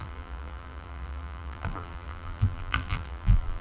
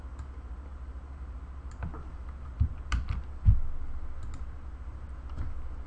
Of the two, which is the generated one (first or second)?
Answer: first